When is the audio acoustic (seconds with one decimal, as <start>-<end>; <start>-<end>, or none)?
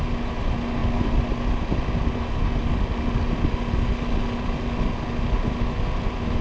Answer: 0.0-6.4